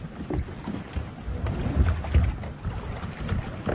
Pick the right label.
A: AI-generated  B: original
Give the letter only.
B